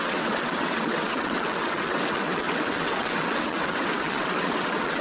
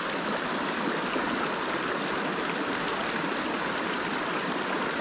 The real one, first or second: second